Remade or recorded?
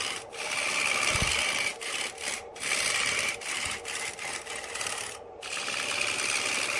recorded